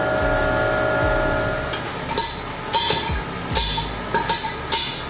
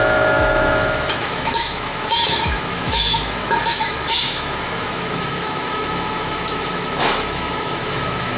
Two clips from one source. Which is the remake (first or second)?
second